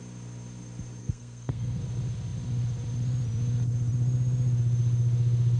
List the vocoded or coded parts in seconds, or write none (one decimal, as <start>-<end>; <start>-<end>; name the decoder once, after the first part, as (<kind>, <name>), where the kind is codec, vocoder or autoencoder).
1.0-1.8 (codec, SNAC)